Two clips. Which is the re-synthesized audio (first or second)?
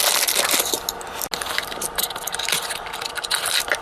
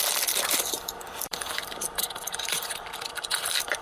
second